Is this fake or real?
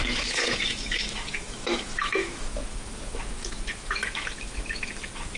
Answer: fake